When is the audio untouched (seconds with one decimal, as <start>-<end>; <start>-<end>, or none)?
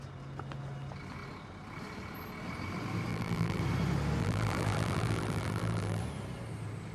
0.0-3.1; 3.6-4.2; 6.0-6.9